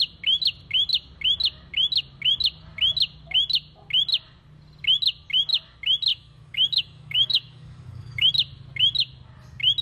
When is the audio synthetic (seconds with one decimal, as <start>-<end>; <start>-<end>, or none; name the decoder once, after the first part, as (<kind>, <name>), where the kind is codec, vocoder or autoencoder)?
6.1-8.3 (codec, DAC)